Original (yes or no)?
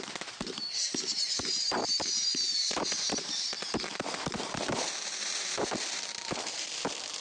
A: no